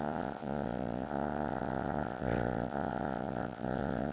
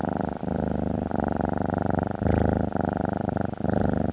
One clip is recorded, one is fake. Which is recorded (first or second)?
second